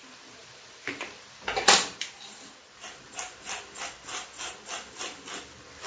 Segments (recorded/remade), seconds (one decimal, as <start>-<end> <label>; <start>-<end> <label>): 0.0-0.4 recorded; 0.4-2.5 remade; 2.5-5.9 recorded